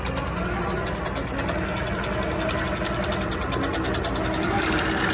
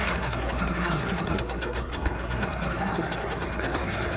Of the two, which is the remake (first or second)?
second